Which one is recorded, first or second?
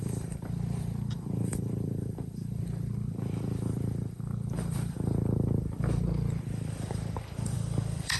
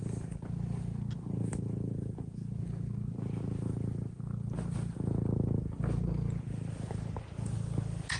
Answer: second